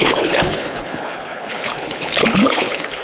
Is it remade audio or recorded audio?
remade